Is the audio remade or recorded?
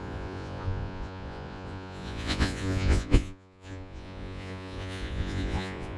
remade